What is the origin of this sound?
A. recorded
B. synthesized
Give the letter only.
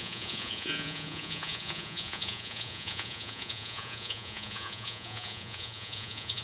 B